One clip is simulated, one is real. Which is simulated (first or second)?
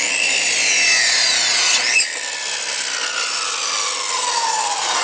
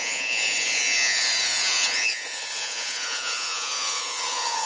second